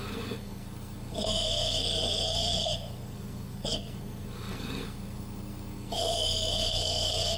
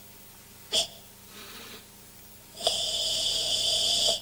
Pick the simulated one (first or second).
first